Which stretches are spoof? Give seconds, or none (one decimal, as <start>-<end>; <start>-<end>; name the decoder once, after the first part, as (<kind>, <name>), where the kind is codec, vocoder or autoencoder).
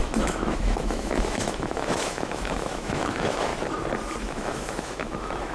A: 0.0-3.5 (autoencoder, DAC-VAE); 4.2-5.5